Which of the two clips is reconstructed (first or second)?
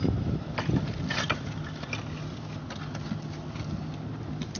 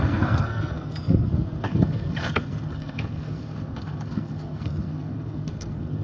second